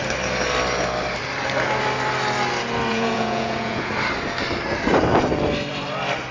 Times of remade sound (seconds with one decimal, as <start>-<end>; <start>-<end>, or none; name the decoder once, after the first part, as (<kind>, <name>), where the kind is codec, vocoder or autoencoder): 2.9-3.9 (vocoder, Vocos)